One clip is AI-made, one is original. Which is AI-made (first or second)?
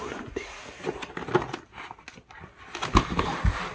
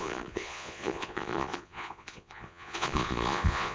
second